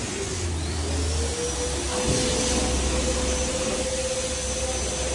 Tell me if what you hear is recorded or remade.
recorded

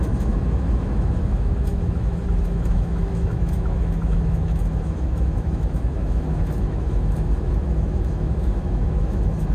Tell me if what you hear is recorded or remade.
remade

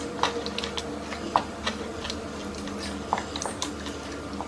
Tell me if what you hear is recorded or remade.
recorded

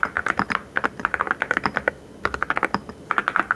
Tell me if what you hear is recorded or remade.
recorded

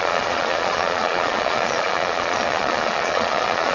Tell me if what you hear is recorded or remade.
remade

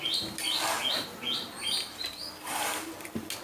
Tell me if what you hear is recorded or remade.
recorded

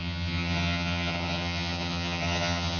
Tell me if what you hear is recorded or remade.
remade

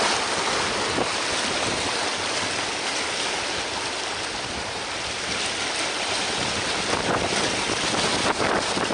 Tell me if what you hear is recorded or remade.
recorded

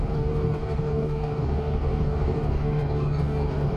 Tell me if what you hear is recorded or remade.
remade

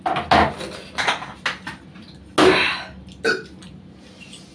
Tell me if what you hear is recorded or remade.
recorded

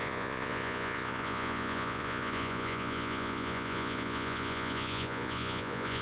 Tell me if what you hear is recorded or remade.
remade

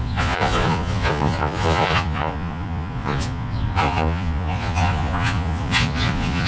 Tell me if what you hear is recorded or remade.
remade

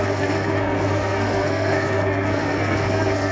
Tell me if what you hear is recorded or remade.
remade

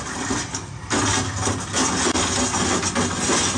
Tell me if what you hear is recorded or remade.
recorded